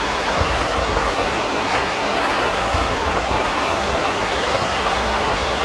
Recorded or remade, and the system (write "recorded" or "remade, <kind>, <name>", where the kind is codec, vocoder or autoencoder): remade, codec, SNAC